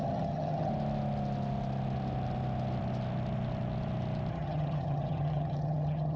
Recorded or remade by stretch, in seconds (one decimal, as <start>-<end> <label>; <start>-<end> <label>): 0.0-0.7 remade; 0.7-4.3 recorded; 4.3-6.2 remade